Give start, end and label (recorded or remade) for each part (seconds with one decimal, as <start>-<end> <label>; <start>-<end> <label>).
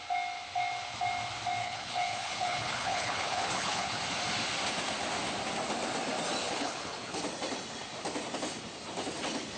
0.0-1.6 recorded; 1.6-4.0 remade; 4.0-6.4 recorded; 6.4-7.2 remade; 7.2-9.6 recorded